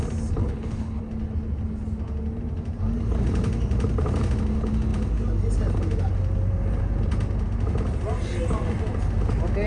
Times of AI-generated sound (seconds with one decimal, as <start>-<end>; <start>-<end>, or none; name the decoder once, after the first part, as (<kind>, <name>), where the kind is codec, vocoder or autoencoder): 0.4-1.0 (codec, HILCodec)